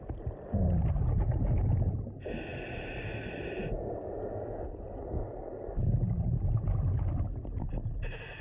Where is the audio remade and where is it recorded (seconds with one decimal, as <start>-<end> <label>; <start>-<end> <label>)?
0.0-8.4 recorded